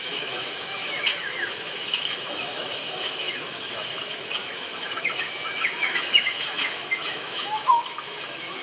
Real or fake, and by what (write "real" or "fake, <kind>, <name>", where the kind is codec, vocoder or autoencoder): fake, autoencoder, DAC-VAE